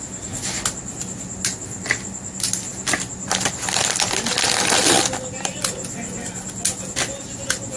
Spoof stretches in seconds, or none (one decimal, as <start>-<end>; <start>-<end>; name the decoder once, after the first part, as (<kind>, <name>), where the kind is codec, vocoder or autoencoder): none